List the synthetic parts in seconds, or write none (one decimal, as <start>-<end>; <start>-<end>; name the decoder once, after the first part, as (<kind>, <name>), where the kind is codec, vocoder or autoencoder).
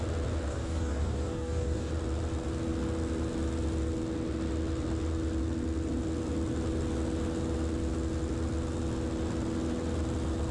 0.5-1.9 (codec, DAC)